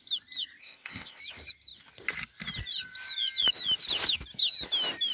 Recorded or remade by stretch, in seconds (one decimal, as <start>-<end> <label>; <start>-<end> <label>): 0.0-0.6 recorded; 0.6-1.2 remade; 1.2-5.1 recorded